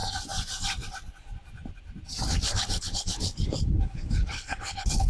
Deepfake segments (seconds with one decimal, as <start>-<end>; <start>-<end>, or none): 2.3-5.1